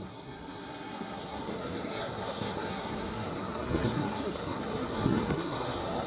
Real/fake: fake